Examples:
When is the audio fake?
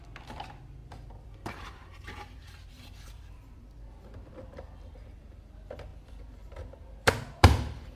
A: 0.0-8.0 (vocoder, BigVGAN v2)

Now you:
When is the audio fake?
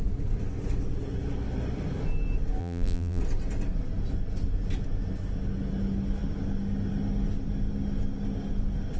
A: 2.6-3.2 (vocoder, BigVGAN v2)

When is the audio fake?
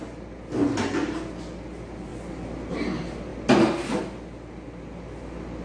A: none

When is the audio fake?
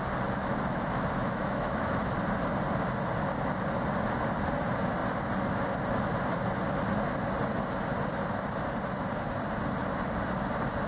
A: 0.4-2.0 (autoencoder, DAC-VAE)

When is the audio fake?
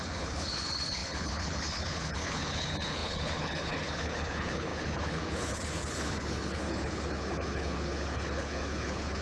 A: 0.0-9.2 (codec, HILCodec)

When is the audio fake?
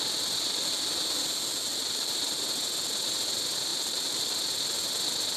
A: 1.7-2.4 (vocoder, BigVGAN v2); 3.7-4.3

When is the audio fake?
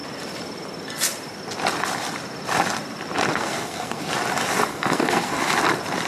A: 3.3-4.1 (codec, SNAC); 4.7-5.4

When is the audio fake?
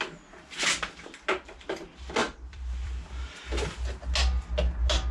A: 2.2-3.5 (vocoder, BigVGAN v2)